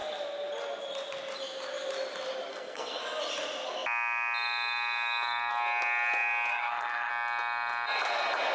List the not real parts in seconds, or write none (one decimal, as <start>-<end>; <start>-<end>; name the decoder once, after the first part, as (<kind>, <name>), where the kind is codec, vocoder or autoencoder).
2.5-3.0 (codec, SNAC); 6.5-7.1